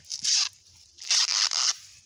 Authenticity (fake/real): real